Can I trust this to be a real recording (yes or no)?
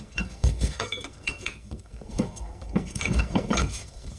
no